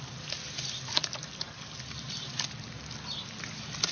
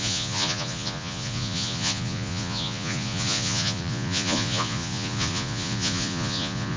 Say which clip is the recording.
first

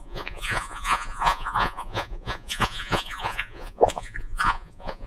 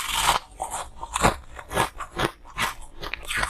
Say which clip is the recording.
second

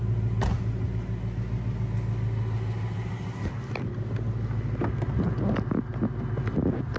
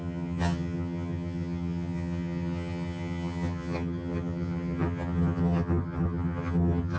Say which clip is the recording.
first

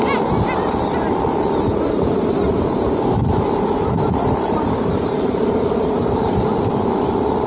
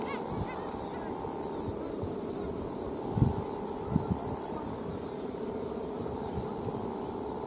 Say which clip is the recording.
second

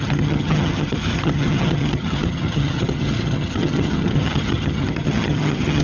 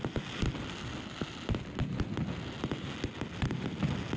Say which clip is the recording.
second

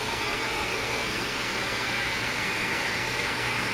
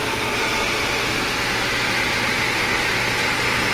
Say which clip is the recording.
second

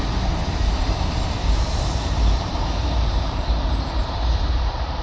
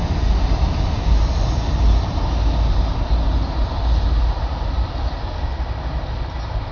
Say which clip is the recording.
second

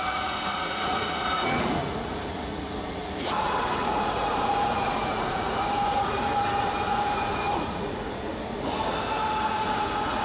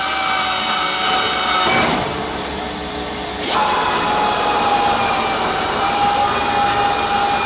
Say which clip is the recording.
second